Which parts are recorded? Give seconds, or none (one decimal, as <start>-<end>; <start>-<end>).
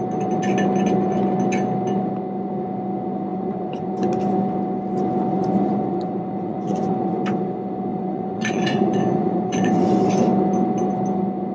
0.0-3.3; 3.9-5.3; 7.2-7.9; 9.9-11.5